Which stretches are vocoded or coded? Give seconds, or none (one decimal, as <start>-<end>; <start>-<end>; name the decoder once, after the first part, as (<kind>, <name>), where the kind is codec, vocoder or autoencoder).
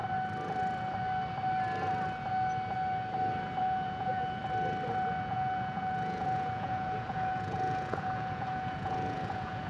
3.6-4.4 (vocoder, Vocos); 5.2-9.7